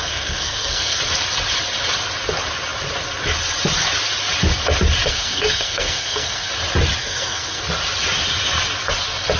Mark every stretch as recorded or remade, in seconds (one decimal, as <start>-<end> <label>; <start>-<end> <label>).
0.0-1.0 remade; 1.0-5.1 recorded; 5.1-6.5 remade; 6.5-7.0 recorded; 7.0-7.6 remade; 7.6-9.4 recorded

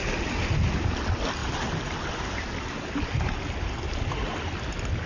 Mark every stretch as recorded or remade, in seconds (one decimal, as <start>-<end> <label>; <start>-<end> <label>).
0.0-5.1 recorded

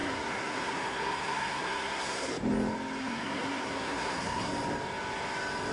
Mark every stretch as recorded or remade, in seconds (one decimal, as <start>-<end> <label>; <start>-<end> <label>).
0.0-2.3 remade; 2.3-3.0 recorded; 3.0-4.5 remade; 4.5-5.7 recorded

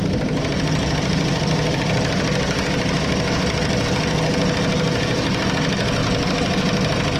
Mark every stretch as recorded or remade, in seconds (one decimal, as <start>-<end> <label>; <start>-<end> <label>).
0.0-6.0 recorded; 6.0-7.2 remade

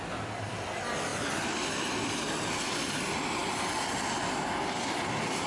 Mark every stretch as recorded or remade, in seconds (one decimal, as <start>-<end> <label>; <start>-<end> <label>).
0.0-5.5 recorded

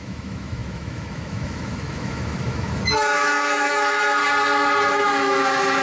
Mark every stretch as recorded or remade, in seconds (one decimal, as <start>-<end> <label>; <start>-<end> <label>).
0.0-4.2 remade; 4.2-4.9 recorded; 4.9-5.8 remade